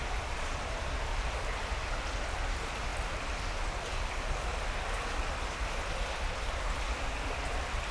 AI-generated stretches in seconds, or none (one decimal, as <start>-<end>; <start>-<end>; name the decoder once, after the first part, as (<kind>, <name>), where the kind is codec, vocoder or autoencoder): none